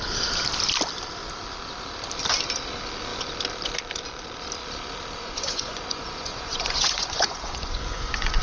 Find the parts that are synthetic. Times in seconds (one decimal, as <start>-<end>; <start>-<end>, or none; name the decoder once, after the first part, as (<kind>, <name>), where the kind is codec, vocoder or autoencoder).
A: 5.2-8.4 (vocoder, Vocos)